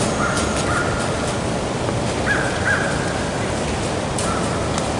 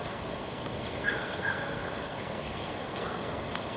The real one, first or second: first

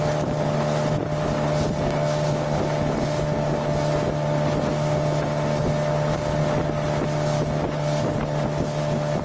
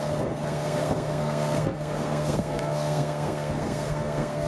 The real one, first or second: first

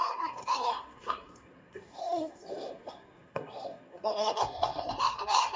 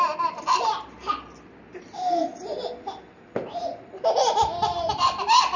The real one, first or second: second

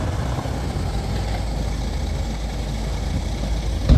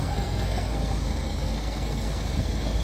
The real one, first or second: first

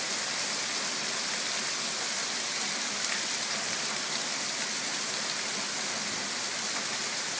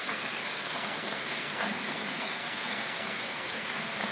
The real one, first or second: first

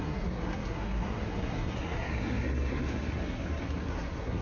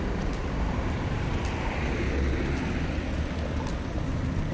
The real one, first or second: second